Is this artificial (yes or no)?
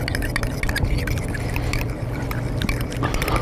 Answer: no